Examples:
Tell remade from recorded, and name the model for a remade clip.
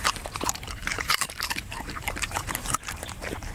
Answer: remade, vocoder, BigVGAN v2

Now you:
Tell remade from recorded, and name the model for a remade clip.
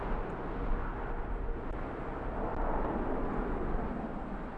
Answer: recorded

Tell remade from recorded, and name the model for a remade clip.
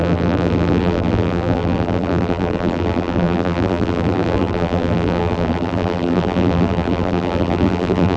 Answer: remade, vocoder, BigVGAN v2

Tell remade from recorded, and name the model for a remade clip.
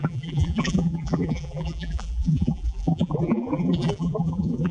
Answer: remade, vocoder, BigVGAN v2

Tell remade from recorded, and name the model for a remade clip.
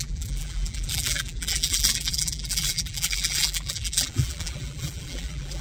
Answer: remade, vocoder, BigVGAN v2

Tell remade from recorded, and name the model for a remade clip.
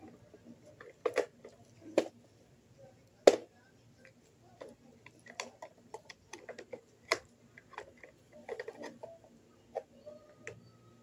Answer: recorded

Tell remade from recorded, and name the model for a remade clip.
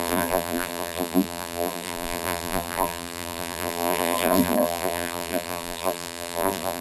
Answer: remade, vocoder, BigVGAN v2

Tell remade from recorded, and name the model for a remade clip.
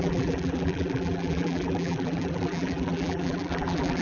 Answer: remade, vocoder, BigVGAN v2